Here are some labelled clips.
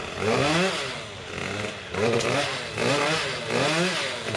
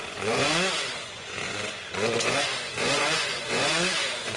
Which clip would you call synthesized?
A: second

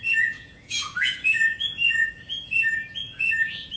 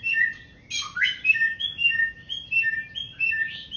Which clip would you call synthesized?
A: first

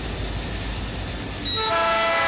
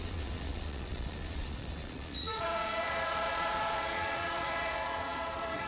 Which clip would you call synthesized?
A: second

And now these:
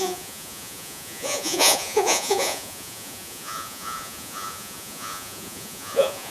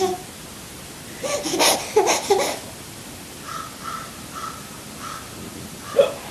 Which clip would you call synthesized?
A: first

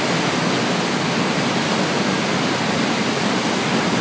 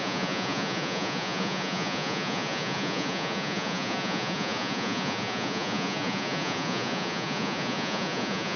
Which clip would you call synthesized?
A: second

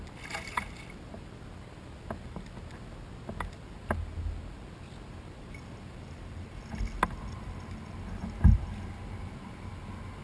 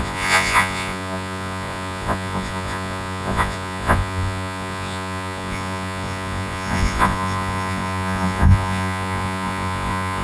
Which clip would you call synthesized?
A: second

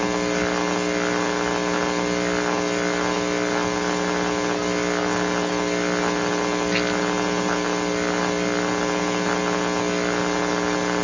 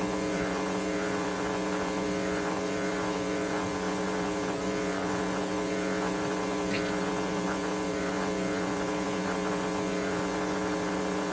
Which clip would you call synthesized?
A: second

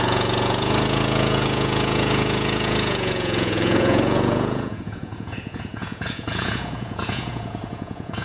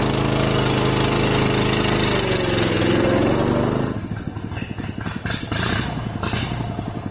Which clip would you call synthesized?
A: first